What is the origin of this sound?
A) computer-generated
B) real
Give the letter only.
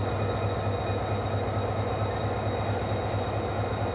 B